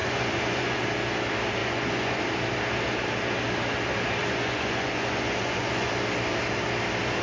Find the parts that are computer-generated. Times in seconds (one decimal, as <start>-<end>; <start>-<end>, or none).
0.0-0.8; 1.6-2.2; 4.2-5.9